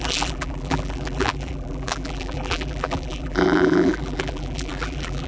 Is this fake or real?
fake